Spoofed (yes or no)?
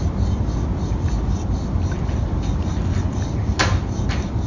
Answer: no